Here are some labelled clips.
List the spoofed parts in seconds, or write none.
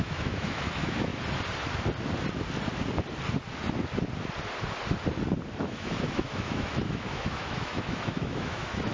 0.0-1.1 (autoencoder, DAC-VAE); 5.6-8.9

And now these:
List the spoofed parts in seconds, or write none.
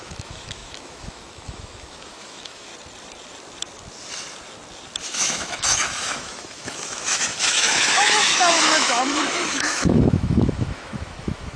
0.0-2.7 (autoencoder, DAC-VAE); 5.0-11.6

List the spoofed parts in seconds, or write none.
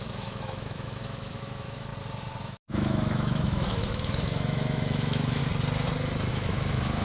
0.0-1.9 (autoencoder, DAC-VAE); 2.4-5.4; 6.3-7.0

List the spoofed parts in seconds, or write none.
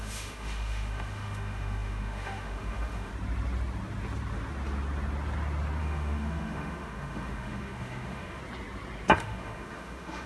0.0-3.1 (autoencoder, DAC-VAE); 5.8-8.4; 9.2-10.3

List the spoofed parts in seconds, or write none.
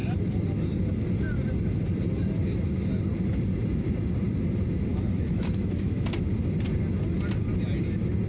4.9-6.1 (autoencoder, DAC-VAE)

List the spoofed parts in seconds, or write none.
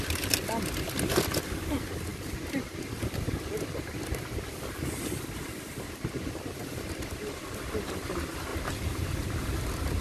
none